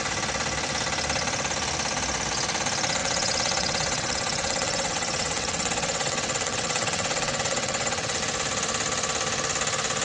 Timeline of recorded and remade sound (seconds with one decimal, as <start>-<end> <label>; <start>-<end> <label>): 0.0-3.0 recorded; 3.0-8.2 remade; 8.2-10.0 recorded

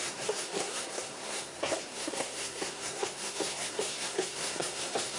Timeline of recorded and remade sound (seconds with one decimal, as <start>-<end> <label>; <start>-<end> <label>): 0.0-5.2 remade

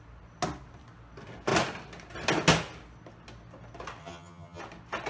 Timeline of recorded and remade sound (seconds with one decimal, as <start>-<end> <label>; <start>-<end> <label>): 0.0-4.0 recorded; 4.0-4.6 remade; 4.6-5.1 recorded